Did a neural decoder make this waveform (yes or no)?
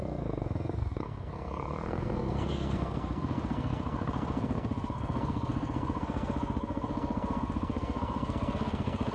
yes